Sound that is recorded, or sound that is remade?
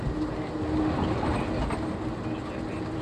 recorded